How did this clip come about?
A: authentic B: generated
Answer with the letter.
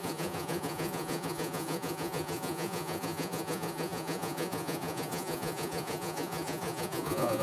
B